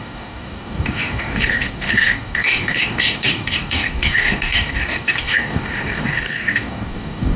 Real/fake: fake